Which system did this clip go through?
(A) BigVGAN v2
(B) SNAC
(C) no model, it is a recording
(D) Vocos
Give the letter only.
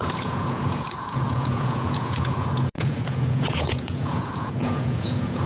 D